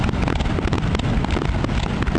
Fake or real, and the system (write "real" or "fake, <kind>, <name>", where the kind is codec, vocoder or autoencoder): real